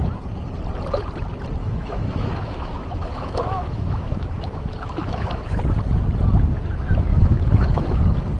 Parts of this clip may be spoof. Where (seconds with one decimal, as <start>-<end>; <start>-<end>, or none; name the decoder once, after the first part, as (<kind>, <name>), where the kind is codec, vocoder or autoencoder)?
1.6-5.6 (autoencoder, DAC-VAE); 7.1-8.0